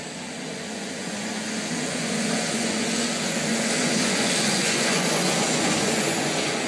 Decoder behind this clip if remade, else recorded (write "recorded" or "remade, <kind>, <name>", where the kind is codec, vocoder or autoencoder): remade, vocoder, Vocos